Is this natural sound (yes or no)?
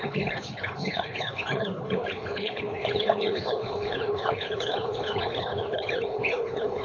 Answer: no